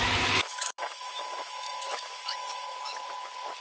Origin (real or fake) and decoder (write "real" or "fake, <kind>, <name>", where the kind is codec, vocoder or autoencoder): fake, autoencoder, DAC-VAE